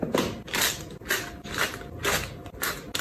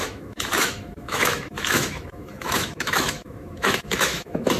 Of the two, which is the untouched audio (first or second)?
first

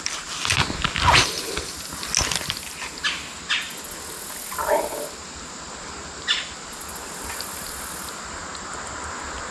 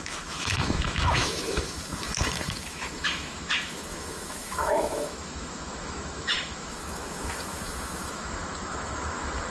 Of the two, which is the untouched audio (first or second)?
first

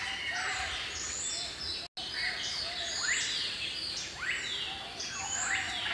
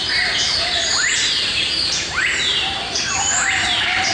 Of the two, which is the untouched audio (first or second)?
first